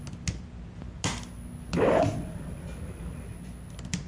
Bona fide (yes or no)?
yes